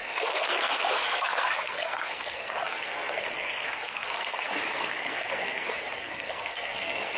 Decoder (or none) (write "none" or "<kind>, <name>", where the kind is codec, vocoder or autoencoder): codec, SNAC